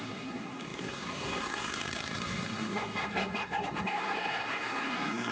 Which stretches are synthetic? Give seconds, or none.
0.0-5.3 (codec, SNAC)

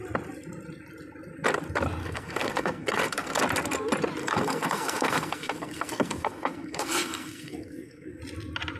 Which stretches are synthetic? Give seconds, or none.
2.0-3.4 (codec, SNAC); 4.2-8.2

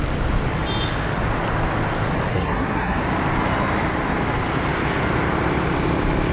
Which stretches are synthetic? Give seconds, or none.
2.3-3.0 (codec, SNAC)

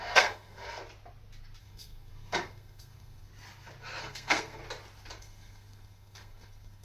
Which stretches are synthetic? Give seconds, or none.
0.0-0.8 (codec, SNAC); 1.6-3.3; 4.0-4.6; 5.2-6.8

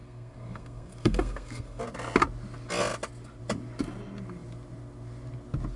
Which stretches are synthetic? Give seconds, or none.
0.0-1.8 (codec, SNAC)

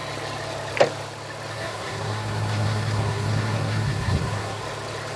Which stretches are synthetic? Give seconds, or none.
1.5-4.6 (codec, SNAC)

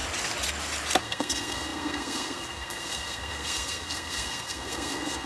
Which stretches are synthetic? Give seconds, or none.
1.0-5.3 (codec, SNAC)

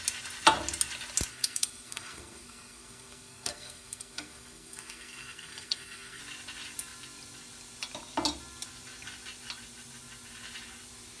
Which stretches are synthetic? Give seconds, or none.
1.3-6.2 (codec, SNAC)